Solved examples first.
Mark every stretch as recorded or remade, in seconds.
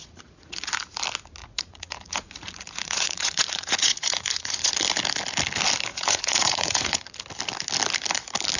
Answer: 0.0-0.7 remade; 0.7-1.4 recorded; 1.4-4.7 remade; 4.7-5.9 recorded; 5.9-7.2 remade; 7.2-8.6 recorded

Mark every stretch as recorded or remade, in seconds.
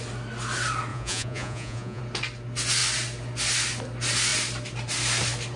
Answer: 0.0-0.9 recorded; 0.9-2.0 remade; 2.0-5.6 recorded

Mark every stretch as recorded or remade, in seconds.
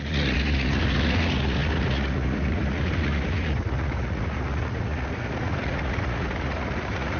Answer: 0.0-7.2 remade